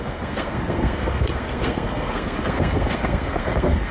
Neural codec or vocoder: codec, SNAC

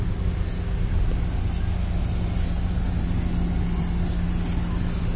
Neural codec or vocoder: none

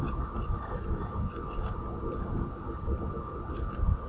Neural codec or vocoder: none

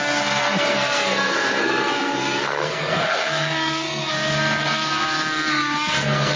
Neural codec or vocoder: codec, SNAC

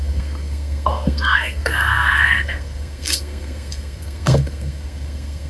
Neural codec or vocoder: codec, SNAC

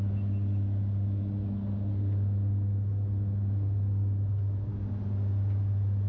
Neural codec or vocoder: none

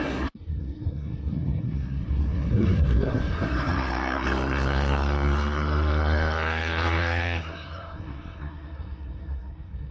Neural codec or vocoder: codec, SNAC